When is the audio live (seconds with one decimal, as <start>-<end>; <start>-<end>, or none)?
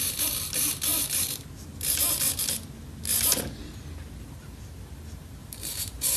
0.0-5.4